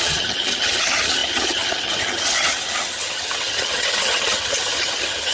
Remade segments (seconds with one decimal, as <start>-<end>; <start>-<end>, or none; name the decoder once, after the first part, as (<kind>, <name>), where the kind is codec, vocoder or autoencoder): 0.0-5.3 (vocoder, HiFi-GAN)